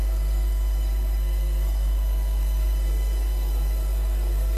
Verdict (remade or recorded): remade